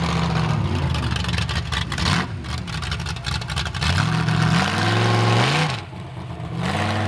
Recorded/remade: recorded